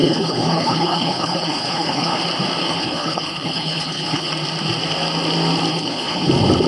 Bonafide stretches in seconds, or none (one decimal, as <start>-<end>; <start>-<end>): 2.2-2.6; 4.3-5.7; 6.3-6.7